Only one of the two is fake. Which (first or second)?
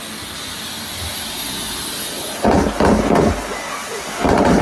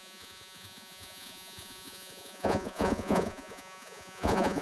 second